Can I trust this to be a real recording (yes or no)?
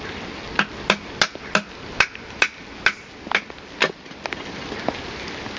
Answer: yes